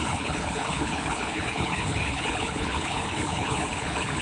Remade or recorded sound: remade